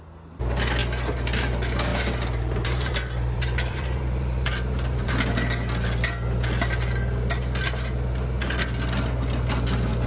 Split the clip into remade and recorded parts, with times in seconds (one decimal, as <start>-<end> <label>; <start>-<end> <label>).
0.0-1.9 recorded; 1.9-5.1 remade; 5.1-10.1 recorded